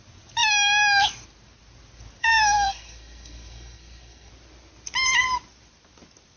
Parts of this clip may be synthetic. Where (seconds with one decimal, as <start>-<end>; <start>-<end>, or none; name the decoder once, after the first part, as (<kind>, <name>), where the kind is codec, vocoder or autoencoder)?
2.2-4.3 (codec, SNAC)